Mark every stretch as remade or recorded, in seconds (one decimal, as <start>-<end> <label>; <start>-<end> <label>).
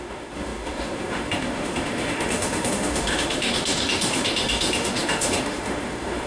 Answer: 0.0-6.3 remade